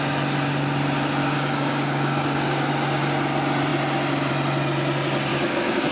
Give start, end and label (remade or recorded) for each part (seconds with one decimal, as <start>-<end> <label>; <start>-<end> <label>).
0.0-1.2 recorded; 1.2-2.7 remade; 2.7-5.3 recorded; 5.3-5.9 remade